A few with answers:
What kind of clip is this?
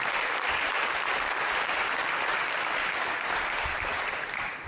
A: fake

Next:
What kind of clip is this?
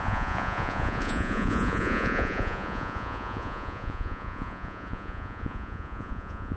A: fake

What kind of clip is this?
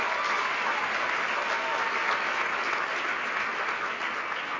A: real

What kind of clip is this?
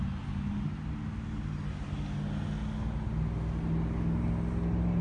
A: real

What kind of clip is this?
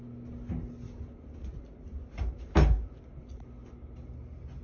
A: real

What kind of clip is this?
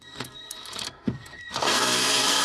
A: fake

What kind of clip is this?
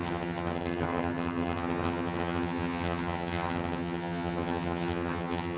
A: fake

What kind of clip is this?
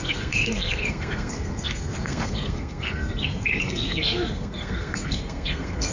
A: fake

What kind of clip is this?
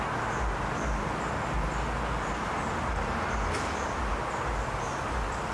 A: real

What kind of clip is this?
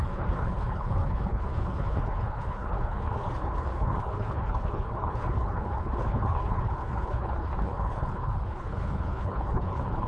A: fake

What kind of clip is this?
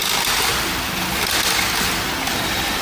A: real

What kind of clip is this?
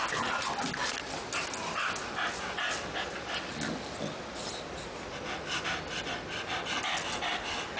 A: real